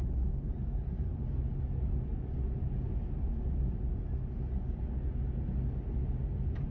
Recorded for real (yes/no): yes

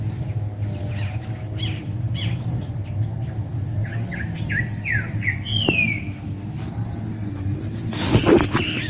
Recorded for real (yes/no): yes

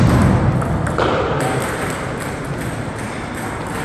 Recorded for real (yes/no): yes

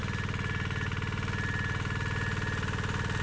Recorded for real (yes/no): yes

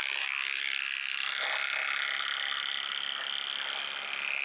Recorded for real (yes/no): yes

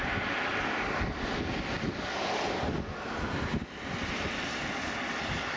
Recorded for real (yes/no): yes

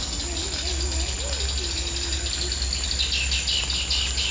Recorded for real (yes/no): yes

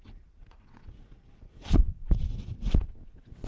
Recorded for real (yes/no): no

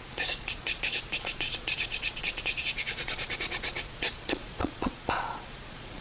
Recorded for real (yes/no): no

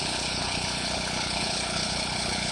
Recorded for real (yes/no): no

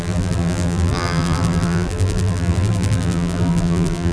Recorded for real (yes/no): no